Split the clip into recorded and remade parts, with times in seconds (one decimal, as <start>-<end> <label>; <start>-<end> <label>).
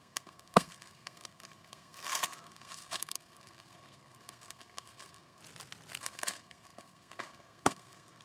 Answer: 0.0-5.4 remade; 5.4-6.0 recorded; 6.0-8.2 remade